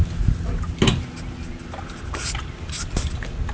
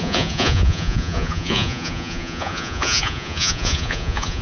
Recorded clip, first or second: first